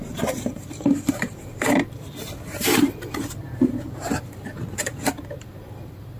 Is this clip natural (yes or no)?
no